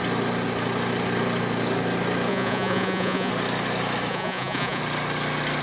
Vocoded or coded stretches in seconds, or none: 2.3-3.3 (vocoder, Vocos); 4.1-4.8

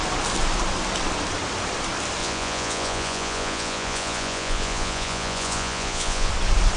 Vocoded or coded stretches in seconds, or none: 2.2-6.3 (vocoder, Vocos)

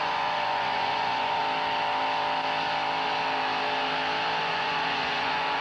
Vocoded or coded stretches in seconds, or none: 0.0-1.4 (vocoder, Vocos); 4.4-5.6